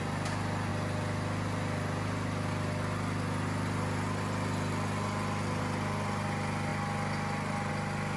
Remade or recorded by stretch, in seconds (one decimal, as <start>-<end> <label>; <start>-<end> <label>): 0.0-8.2 recorded